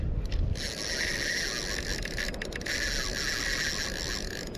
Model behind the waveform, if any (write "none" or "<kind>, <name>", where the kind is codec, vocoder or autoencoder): none